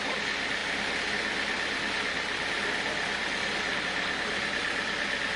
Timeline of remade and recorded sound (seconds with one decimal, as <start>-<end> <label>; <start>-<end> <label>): 0.0-5.4 recorded

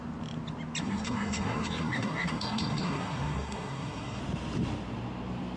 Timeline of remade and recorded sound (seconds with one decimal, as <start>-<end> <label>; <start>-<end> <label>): 0.0-0.8 recorded; 0.8-4.2 remade; 4.2-5.6 recorded